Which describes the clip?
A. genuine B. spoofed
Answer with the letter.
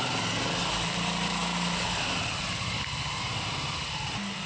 A